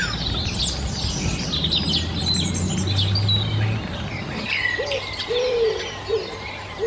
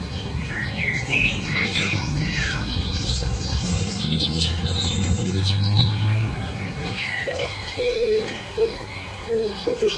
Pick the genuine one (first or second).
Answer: first